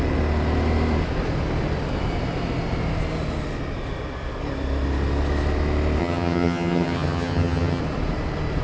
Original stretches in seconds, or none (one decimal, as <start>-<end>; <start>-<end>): 0.0-6.0; 7.8-8.6